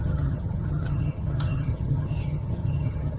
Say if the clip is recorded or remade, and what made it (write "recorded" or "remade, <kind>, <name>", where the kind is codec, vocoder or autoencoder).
remade, vocoder, HiFi-GAN